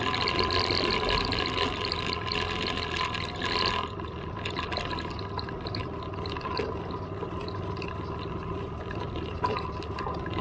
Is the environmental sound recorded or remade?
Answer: recorded